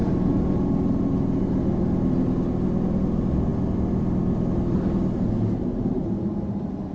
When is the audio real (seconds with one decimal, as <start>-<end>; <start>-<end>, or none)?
0.0-6.9